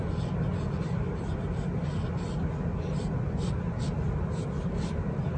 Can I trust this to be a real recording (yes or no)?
yes